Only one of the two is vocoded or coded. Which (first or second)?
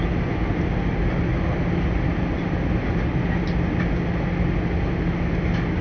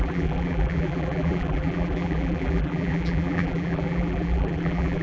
second